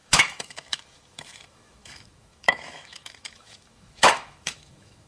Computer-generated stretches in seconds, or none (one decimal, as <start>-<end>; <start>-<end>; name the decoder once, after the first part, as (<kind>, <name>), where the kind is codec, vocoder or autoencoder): 0.0-5.1 (autoencoder, DAC-VAE)